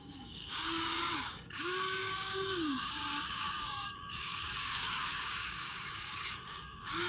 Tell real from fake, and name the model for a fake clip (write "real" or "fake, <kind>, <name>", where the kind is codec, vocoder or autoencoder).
fake, codec, DAC